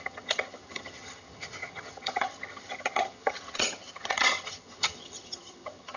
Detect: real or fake fake